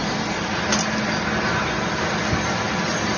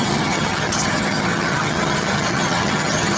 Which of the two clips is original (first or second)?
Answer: first